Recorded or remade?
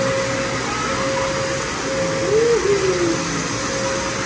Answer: recorded